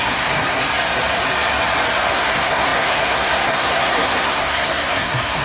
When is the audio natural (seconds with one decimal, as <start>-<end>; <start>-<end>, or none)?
0.6-2.1